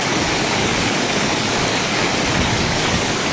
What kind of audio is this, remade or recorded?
remade